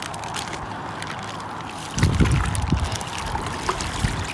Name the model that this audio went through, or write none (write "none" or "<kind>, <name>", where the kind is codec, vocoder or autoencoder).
none